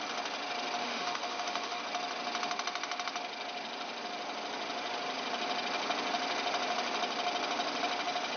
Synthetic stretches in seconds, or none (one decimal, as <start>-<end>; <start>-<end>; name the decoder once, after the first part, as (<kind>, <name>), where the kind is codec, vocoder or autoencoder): 0.8-1.8 (autoencoder, DAC-VAE)